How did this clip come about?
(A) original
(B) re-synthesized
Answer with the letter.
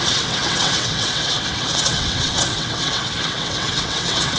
B